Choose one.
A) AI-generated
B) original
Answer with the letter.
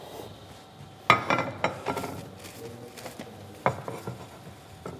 B